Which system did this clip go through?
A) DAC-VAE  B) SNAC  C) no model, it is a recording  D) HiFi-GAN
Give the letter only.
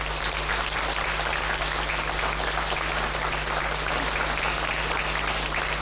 C